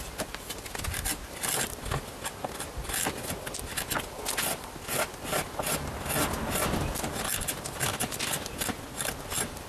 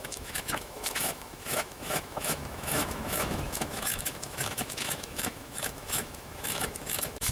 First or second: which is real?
first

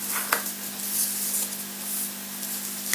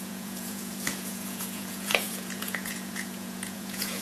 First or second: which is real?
first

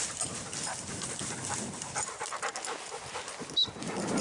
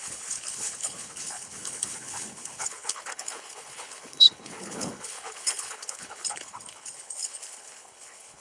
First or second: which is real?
first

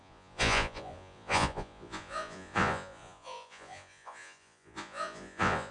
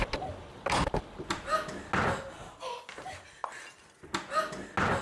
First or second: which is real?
second